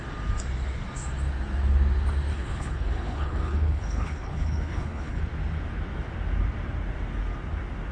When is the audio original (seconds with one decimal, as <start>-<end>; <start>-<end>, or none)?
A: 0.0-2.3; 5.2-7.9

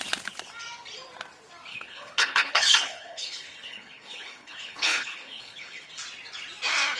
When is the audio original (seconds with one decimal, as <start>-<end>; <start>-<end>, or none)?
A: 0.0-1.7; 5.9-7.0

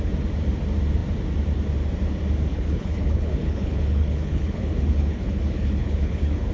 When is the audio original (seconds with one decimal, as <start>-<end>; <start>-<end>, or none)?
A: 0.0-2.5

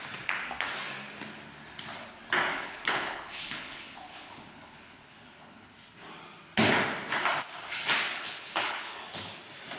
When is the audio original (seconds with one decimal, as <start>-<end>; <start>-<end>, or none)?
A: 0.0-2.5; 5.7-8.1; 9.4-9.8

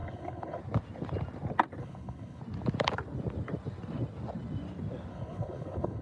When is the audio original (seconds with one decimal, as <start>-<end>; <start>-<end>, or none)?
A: 0.6-1.8; 2.4-5.1

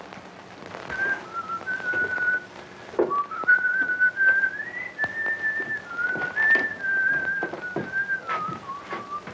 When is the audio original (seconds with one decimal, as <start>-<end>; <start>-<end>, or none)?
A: 0.0-9.3

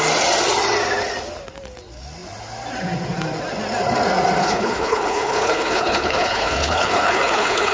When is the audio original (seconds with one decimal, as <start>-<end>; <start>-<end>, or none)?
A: 0.0-4.4